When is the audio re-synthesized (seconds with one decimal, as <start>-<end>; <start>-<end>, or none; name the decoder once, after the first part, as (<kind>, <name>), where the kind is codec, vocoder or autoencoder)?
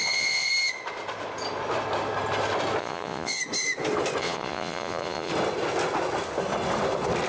0.0-0.5 (vocoder, Vocos); 2.8-3.4; 4.2-5.3